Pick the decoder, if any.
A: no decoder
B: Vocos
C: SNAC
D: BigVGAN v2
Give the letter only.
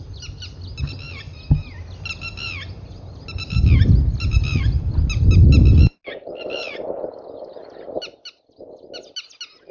A